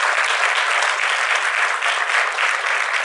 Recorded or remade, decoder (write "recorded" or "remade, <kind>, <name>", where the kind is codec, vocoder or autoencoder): remade, vocoder, BigVGAN v2